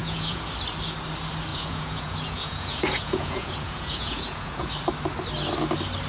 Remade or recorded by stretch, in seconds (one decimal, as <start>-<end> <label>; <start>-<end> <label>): 0.0-0.5 remade; 0.5-1.5 recorded; 1.5-4.7 remade; 4.7-6.1 recorded